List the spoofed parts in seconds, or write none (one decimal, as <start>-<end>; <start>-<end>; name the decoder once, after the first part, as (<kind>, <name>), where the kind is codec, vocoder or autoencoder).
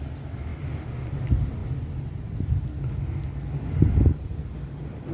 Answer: none